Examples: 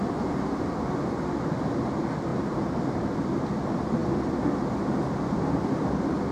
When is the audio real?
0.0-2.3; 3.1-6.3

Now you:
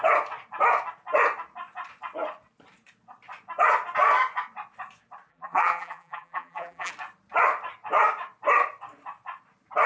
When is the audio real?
0.0-5.3; 6.9-9.9

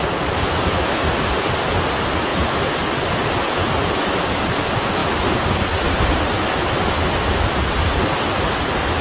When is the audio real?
0.0-9.0